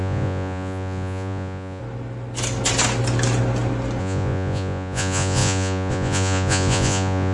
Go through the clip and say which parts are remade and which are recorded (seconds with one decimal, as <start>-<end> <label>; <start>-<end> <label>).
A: 0.0-1.8 remade; 1.8-4.0 recorded; 4.0-7.3 remade